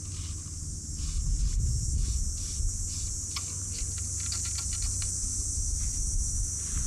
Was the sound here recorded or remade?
recorded